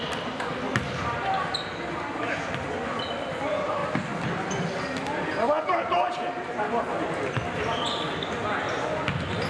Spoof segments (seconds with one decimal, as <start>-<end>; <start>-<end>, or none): none